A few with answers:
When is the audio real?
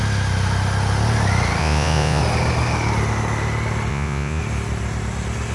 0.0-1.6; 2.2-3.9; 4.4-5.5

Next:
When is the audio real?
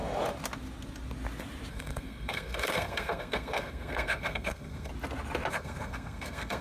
0.0-1.7; 4.9-5.5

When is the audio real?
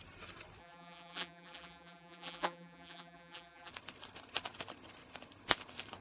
0.0-0.6; 3.7-6.0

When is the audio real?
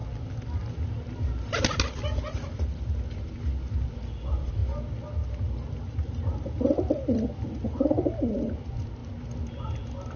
0.0-10.2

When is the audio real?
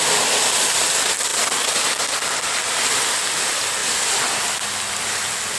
0.0-5.6